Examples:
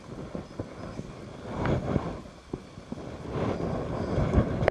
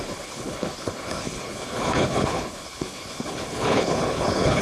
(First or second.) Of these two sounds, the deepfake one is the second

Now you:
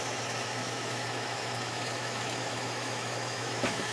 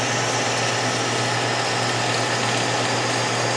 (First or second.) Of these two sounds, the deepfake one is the first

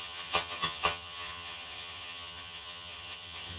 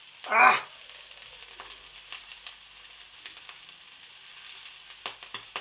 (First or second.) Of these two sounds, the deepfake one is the first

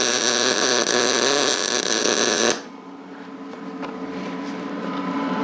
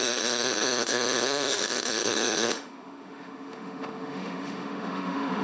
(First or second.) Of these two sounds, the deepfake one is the second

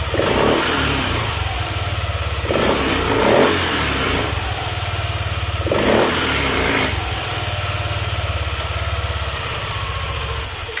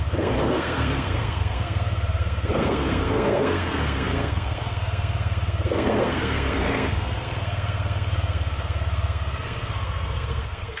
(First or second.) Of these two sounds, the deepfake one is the second